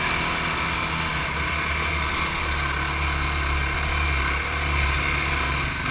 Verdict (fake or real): real